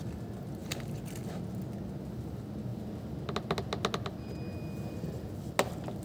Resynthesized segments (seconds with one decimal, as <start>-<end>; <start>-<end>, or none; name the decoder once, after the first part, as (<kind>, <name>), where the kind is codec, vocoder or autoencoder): none